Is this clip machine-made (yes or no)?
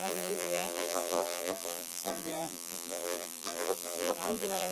yes